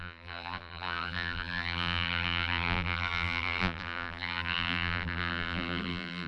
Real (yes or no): no